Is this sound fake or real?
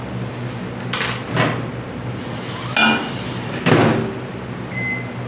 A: real